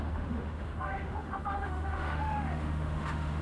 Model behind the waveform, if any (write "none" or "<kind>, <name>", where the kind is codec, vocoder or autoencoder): autoencoder, DAC-VAE